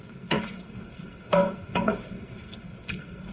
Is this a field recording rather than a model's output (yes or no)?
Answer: no